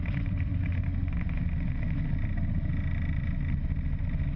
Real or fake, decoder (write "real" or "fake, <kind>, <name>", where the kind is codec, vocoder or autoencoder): real